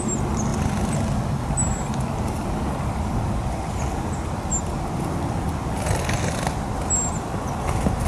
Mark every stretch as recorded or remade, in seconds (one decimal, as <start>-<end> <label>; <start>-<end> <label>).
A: 0.0-8.1 recorded